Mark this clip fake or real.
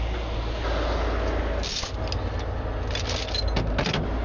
real